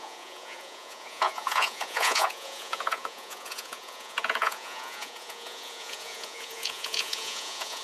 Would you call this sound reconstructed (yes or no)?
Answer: yes